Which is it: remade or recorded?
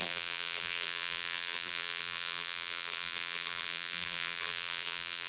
remade